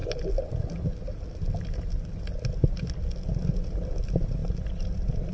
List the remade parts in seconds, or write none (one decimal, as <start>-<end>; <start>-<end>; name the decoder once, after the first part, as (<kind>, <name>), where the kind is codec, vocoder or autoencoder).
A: none